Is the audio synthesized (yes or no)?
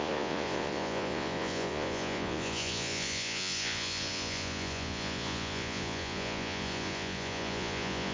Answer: yes